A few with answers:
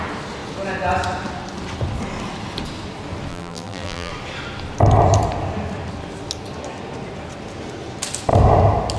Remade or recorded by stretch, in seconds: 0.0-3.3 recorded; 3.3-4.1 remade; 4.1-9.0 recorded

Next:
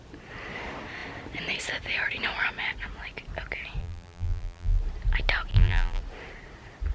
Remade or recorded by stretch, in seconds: 0.0-3.8 recorded; 3.8-4.8 remade; 4.8-5.5 recorded; 5.5-6.0 remade; 6.0-6.9 recorded

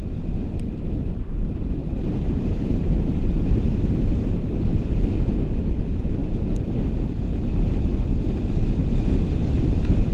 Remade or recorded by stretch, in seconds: 0.0-1.8 recorded; 1.8-4.6 remade; 4.6-10.1 recorded

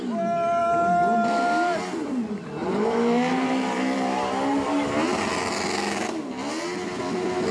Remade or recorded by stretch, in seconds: 0.0-2.6 recorded; 2.6-4.9 remade; 4.9-7.5 recorded